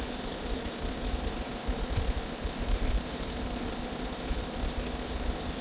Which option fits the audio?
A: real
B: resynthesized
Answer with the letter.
A